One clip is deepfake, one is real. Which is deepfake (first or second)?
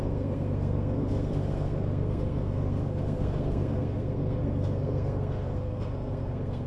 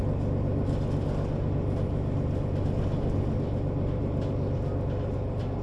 first